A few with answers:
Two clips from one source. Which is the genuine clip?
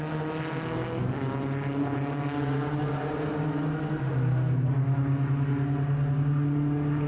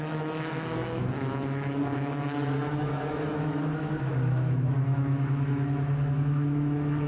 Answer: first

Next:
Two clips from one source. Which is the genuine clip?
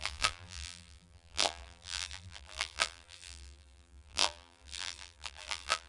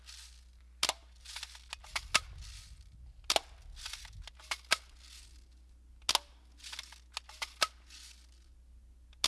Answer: second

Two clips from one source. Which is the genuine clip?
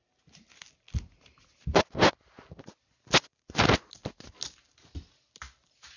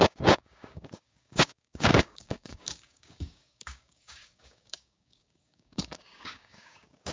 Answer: first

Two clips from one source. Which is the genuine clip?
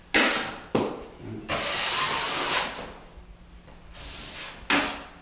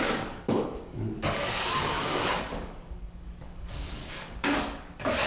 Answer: first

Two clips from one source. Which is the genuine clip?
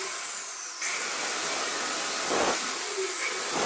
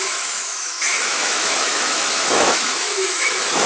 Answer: first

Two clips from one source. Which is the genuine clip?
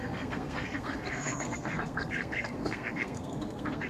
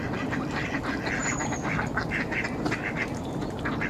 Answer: second